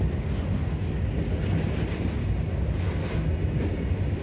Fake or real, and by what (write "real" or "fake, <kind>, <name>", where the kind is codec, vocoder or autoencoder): real